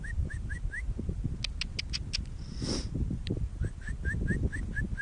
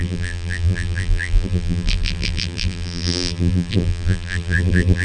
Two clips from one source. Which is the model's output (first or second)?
second